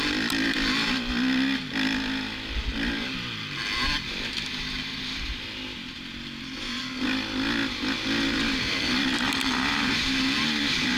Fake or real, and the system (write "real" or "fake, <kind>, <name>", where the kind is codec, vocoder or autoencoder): real